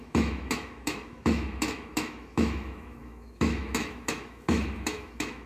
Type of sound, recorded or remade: remade